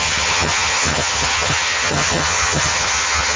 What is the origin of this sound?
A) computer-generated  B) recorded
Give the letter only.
A